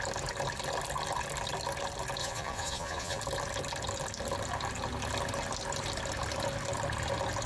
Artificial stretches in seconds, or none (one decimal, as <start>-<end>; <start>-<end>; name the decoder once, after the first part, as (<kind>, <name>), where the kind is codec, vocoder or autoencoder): 2.2-3.2 (vocoder, Vocos)